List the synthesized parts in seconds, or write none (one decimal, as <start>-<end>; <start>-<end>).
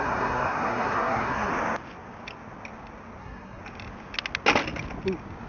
0.0-1.5; 3.2-3.6